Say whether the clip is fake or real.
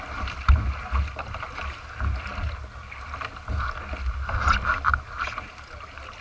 real